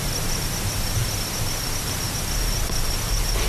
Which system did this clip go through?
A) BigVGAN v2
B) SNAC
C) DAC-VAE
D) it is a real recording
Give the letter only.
D